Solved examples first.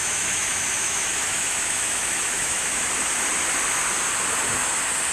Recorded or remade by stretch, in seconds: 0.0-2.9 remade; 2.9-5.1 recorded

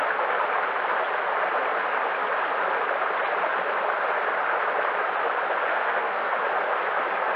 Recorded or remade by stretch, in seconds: 0.0-5.7 recorded; 5.7-6.3 remade; 6.3-7.4 recorded

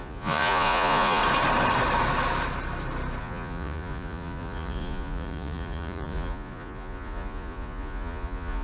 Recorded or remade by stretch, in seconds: 0.0-1.2 remade; 1.2-3.2 recorded; 3.2-8.6 remade

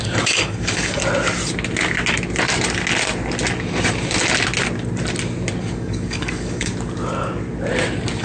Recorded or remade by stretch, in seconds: 0.0-1.0 remade; 1.0-5.6 recorded; 5.6-6.7 remade; 6.7-8.2 recorded